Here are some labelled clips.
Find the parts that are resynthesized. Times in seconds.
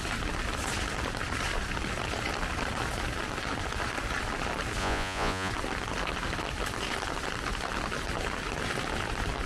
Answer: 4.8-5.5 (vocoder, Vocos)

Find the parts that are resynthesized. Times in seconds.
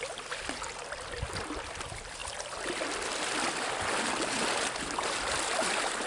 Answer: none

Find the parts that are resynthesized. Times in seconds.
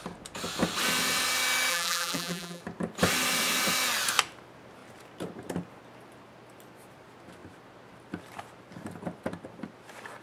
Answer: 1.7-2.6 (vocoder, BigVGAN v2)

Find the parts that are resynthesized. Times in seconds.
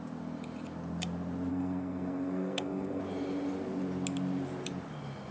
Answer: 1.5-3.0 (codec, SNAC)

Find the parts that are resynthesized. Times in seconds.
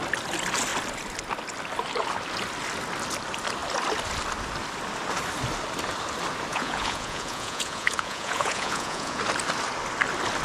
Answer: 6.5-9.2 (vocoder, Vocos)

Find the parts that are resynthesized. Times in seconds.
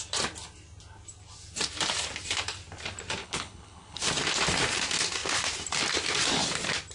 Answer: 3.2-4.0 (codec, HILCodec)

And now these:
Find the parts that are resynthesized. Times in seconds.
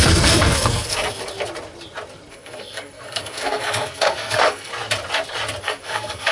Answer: 0.0-1.2 (codec, SNAC); 2.3-4.7; 5.6-6.3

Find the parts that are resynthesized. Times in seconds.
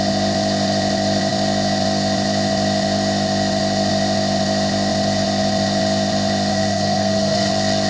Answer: 6.5-7.5 (codec, SNAC)